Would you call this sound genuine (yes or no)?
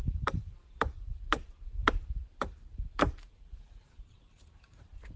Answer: no